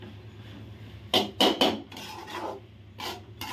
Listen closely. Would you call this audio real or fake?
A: real